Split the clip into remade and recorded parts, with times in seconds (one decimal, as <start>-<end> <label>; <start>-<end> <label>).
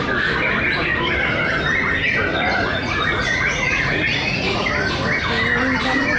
0.0-2.3 recorded; 2.3-4.7 remade; 4.7-6.2 recorded